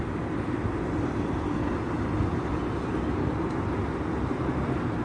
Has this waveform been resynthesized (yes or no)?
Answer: no